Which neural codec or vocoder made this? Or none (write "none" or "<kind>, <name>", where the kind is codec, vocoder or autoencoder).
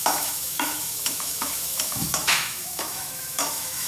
autoencoder, DAC-VAE